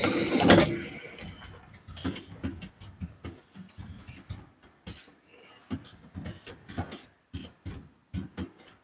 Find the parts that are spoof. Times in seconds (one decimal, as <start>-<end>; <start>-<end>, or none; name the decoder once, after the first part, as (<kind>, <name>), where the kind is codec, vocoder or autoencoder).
none